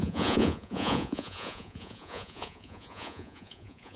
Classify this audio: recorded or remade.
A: remade